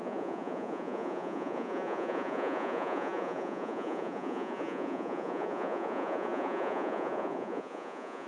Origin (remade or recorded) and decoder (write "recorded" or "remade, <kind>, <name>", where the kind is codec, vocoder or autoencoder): remade, vocoder, Vocos